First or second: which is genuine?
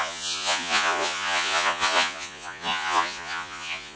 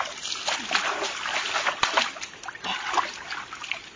second